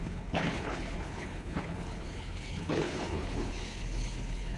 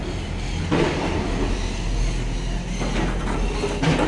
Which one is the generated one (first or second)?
first